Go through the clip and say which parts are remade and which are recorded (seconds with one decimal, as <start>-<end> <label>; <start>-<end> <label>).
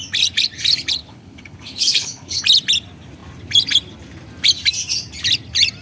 0.0-1.0 recorded; 1.0-2.4 remade; 2.4-5.8 recorded